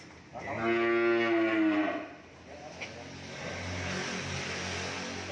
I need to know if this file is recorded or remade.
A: recorded